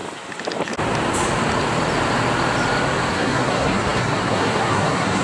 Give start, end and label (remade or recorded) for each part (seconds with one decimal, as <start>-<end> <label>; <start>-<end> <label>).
0.0-3.1 recorded; 3.1-5.2 remade